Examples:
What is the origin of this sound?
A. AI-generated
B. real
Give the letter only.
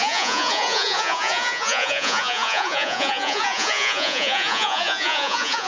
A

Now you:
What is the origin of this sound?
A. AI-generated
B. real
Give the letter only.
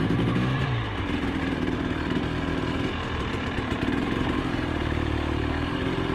A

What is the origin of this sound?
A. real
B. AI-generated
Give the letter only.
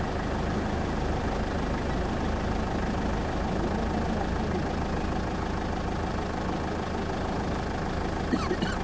A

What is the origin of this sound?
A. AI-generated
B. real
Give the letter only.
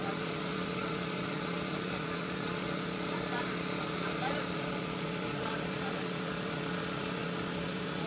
A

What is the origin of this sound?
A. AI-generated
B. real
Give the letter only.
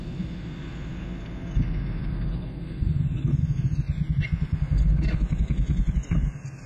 B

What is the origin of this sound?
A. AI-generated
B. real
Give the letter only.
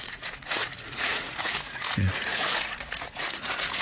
A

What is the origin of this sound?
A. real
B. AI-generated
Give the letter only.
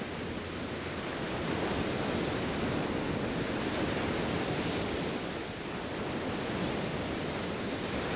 A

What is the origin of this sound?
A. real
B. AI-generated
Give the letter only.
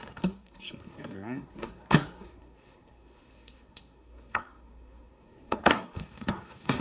B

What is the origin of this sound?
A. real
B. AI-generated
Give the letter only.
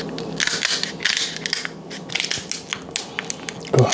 A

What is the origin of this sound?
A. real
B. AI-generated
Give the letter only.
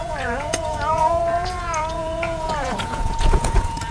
B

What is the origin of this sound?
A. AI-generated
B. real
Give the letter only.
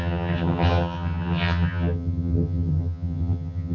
A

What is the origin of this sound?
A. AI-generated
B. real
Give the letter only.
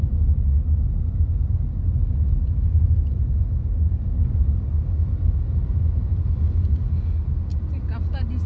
B